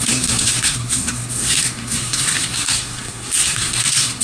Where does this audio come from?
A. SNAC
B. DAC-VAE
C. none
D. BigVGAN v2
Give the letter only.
A